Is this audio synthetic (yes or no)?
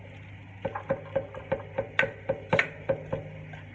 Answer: no